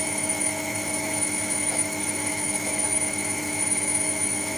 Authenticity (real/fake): fake